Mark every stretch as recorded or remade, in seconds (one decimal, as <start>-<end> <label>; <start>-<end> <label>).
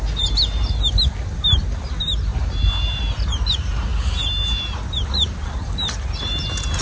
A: 0.0-6.8 recorded